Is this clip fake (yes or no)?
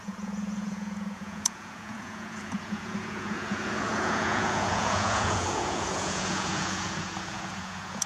yes